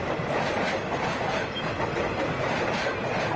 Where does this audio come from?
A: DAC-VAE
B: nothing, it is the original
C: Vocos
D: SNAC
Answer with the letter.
B